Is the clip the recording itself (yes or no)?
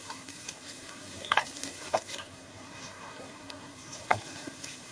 no